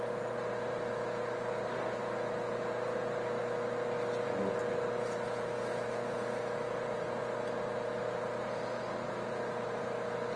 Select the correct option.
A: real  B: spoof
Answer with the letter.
A